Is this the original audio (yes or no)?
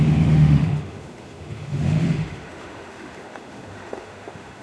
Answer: no